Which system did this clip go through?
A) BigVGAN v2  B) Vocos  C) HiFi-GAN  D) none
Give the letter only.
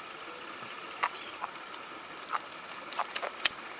A